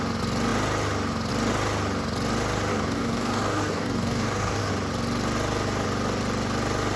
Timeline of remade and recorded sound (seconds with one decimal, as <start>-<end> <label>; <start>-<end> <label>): 0.0-2.7 recorded; 2.7-4.7 remade; 4.7-7.0 recorded